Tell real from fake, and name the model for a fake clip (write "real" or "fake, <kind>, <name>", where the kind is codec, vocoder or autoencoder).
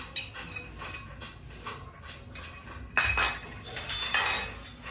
real